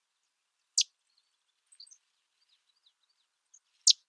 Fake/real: real